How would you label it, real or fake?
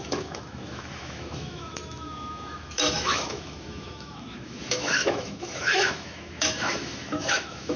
fake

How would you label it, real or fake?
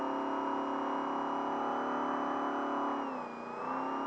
real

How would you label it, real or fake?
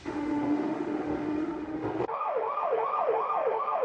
fake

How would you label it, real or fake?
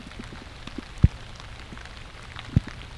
real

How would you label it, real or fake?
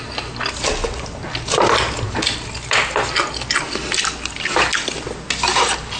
real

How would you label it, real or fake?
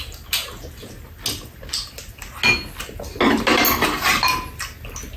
real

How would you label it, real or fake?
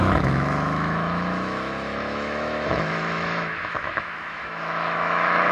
fake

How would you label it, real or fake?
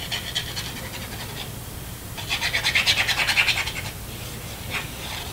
real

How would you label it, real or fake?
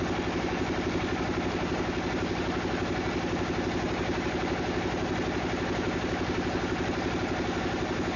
real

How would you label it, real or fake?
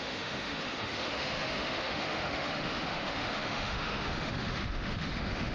fake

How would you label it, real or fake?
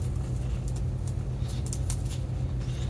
real